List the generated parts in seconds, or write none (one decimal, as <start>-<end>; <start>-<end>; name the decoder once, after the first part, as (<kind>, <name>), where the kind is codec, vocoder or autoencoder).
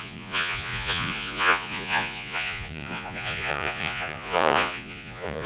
0.0-5.5 (vocoder, Vocos)